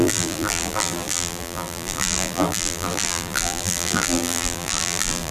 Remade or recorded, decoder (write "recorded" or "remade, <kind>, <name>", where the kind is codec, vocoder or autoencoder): remade, vocoder, BigVGAN v2